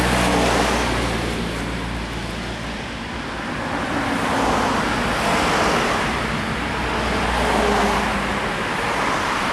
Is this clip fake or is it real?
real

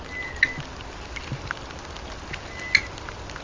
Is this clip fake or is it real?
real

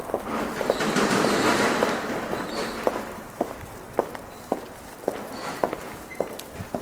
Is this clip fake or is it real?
real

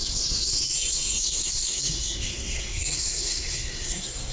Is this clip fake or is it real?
fake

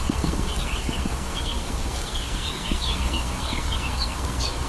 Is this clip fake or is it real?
fake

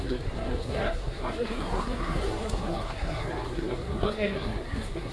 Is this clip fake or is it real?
fake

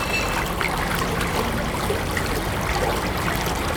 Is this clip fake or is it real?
real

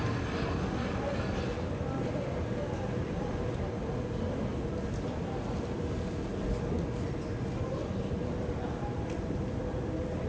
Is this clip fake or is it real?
real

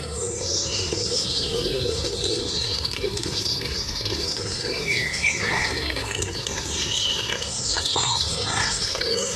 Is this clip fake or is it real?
fake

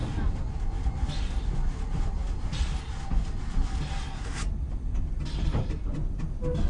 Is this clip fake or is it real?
real